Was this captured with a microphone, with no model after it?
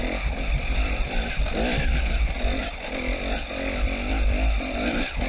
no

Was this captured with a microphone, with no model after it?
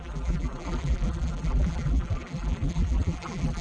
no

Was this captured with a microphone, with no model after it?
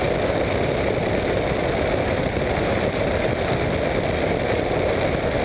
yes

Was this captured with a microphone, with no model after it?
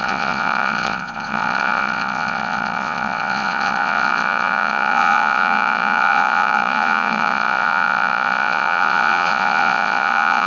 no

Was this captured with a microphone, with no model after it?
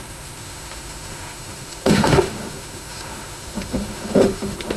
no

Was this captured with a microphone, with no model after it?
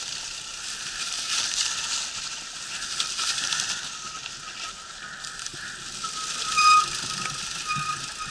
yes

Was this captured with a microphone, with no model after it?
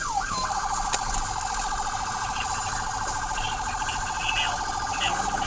yes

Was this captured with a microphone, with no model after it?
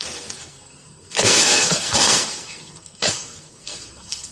no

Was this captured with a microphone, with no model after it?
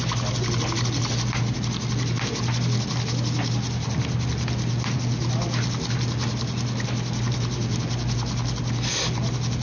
yes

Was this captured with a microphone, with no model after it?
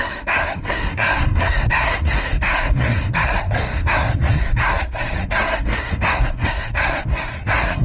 no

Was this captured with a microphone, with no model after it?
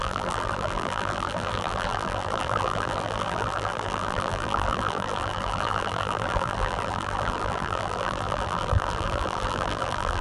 no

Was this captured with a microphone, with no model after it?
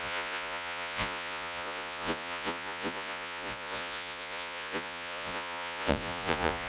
no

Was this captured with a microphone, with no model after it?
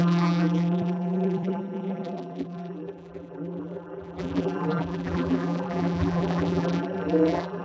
no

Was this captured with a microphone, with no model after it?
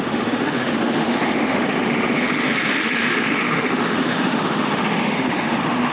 no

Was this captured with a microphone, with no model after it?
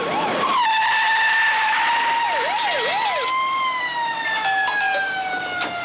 yes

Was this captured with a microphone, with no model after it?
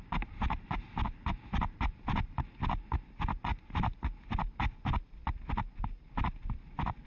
yes